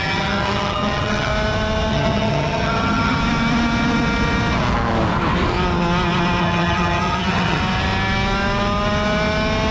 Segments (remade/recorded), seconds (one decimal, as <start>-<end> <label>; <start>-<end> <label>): 0.0-1.3 remade; 1.3-1.9 recorded; 1.9-3.2 remade; 3.2-6.4 recorded; 6.4-7.6 remade; 7.6-9.7 recorded